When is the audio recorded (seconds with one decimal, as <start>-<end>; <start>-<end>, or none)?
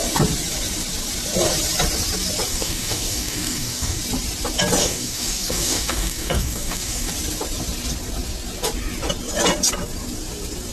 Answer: 0.0-2.5; 4.0-4.8; 7.1-10.7